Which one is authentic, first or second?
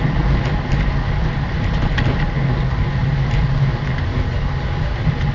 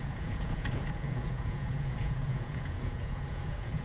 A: first